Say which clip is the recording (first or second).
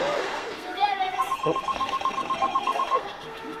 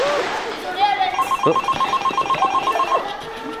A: second